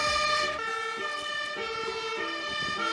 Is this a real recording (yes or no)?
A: yes